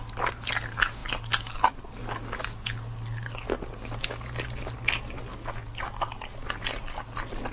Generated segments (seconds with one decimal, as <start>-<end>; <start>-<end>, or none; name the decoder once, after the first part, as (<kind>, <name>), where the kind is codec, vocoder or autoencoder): none